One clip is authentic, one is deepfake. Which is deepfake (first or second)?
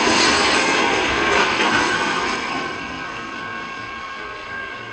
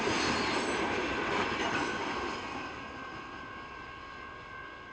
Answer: first